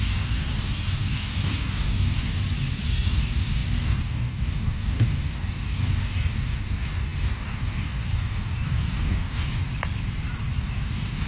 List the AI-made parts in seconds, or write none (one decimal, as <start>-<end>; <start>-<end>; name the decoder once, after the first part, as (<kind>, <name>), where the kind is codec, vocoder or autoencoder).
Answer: 0.0-2.4 (codec, DAC); 2.9-9.6; 10.6-11.3